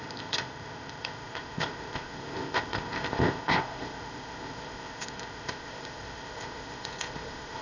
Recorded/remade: remade